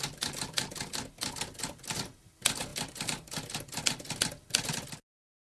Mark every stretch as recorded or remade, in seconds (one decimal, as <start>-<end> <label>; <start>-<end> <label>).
0.0-5.5 recorded